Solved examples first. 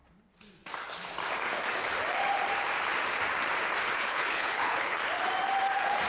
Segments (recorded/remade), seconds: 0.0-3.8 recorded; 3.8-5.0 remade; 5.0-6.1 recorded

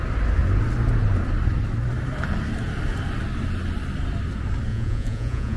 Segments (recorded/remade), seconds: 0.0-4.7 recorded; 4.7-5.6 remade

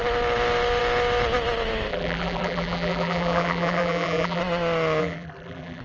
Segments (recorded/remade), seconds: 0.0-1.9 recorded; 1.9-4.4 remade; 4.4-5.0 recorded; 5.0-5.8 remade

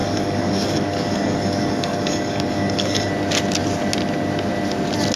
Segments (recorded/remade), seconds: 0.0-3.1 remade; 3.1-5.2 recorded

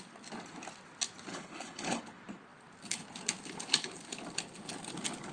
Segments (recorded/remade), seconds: 0.0-1.3 recorded; 1.3-2.0 remade; 2.0-5.3 recorded

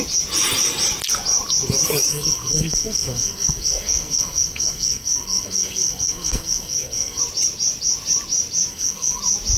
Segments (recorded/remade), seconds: 0.0-2.1 recorded; 2.1-7.2 remade; 7.2-8.7 recorded; 8.7-9.2 remade; 9.2-9.6 recorded

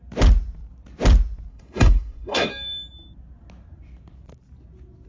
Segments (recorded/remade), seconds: 0.0-1.5 recorded; 1.5-2.5 remade; 2.5-5.1 recorded

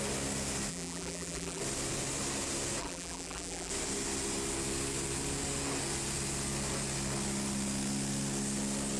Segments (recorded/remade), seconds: 0.0-0.7 recorded; 0.7-1.6 remade; 1.6-2.8 recorded; 2.8-3.7 remade; 3.7-9.0 recorded